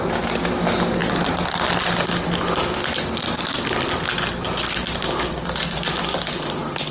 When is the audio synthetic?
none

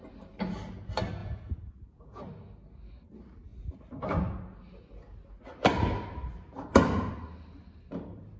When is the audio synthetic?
1.2-2.2 (vocoder, Vocos)

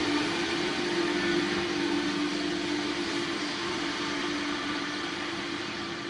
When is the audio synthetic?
0.0-0.7 (vocoder, BigVGAN v2); 1.8-2.3; 2.9-6.1

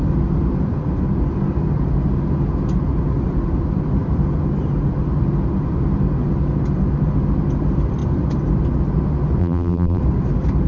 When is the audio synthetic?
9.4-10.0 (vocoder, BigVGAN v2)

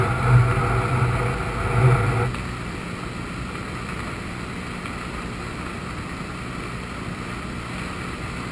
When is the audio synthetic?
none

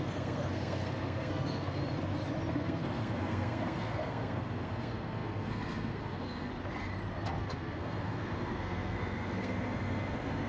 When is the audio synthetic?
0.0-1.8 (codec, SNAC); 2.5-6.5; 7.4-10.5